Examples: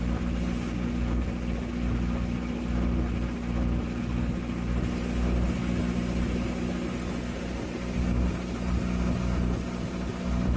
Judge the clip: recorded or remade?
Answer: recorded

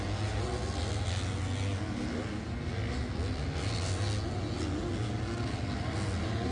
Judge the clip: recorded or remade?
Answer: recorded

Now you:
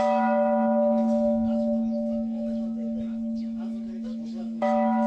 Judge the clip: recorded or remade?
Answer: remade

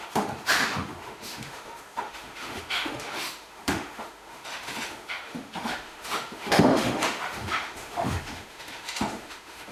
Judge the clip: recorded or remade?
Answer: remade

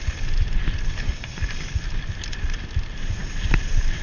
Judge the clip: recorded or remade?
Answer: recorded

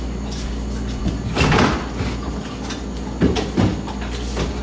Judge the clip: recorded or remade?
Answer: recorded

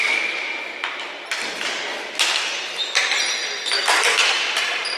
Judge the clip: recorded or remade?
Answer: recorded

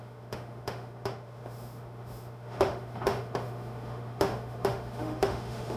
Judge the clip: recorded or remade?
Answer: remade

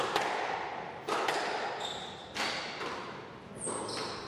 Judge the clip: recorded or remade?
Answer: recorded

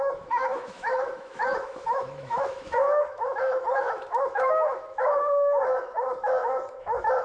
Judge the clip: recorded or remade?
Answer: remade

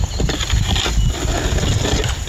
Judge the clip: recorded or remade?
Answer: recorded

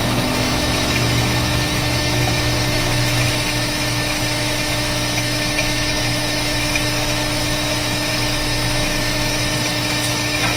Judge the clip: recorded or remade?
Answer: remade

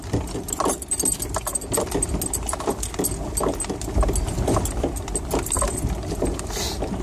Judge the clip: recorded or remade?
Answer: recorded